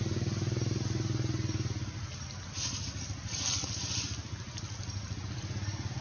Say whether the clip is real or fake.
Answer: real